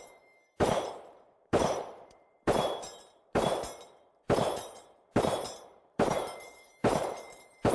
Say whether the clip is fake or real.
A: fake